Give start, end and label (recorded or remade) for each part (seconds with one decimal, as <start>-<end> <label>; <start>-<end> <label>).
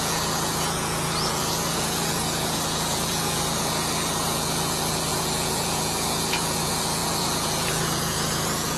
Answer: 0.0-8.8 remade